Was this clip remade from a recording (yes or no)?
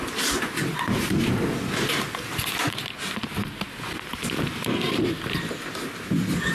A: no